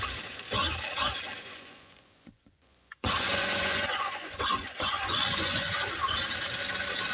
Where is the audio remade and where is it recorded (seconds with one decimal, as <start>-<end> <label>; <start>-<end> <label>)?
0.0-1.4 recorded; 1.4-5.7 remade; 5.7-7.1 recorded